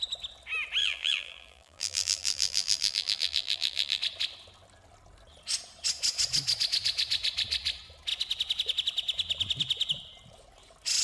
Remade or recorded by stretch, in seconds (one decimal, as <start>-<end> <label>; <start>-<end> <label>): 0.0-0.8 recorded; 0.8-4.0 remade; 4.0-11.0 recorded